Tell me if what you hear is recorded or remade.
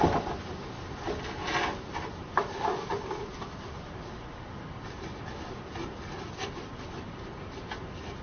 recorded